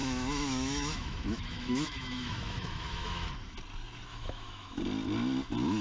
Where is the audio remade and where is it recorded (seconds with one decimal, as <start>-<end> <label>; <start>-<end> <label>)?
0.0-3.3 remade; 3.3-4.1 recorded; 4.1-4.8 remade; 4.8-5.8 recorded